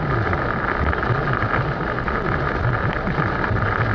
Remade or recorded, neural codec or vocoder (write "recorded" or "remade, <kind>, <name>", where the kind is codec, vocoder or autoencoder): recorded